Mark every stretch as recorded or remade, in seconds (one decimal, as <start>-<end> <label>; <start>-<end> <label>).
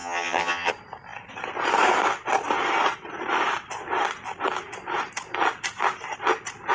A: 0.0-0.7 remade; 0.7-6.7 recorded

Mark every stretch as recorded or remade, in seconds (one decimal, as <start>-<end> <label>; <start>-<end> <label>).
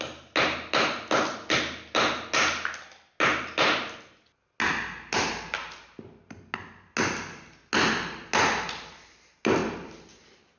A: 0.0-10.6 recorded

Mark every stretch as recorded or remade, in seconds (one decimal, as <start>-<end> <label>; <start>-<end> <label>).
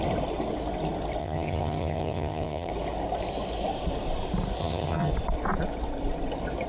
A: 0.0-1.2 recorded; 1.2-2.7 remade; 2.7-4.6 recorded; 4.6-5.1 remade; 5.1-6.7 recorded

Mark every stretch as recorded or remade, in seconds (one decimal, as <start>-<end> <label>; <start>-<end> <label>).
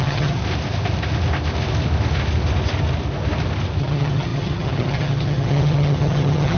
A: 0.0-0.4 remade; 0.4-3.8 recorded; 3.8-6.6 remade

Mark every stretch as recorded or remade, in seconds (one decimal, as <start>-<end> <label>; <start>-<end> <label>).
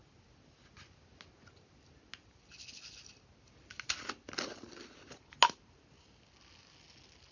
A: 0.0-7.3 recorded